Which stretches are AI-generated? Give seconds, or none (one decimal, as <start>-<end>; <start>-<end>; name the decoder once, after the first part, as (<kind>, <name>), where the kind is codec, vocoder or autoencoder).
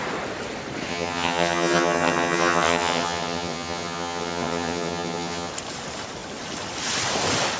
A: 0.9-5.5 (vocoder, HiFi-GAN)